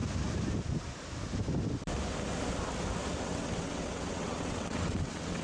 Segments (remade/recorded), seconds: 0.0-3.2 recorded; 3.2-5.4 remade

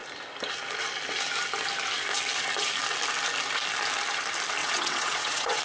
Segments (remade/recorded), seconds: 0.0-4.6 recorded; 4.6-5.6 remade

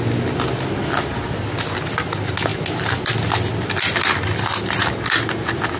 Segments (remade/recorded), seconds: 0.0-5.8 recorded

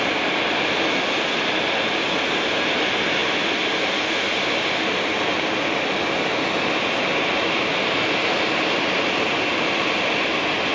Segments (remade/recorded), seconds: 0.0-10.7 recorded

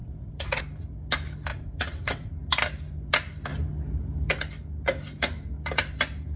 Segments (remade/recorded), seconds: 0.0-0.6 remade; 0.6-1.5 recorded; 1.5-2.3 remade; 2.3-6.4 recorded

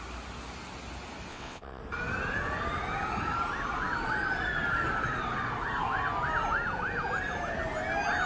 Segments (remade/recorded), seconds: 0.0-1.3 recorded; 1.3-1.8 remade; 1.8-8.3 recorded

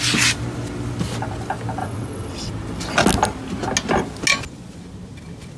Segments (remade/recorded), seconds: 0.0-1.8 recorded; 1.8-2.5 remade; 2.5-5.6 recorded

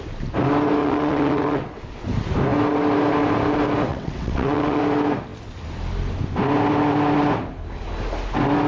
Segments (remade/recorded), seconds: 0.0-0.8 recorded; 0.8-1.8 remade; 1.8-3.9 recorded; 3.9-4.8 remade; 4.8-8.7 recorded